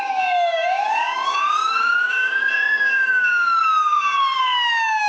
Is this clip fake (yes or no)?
yes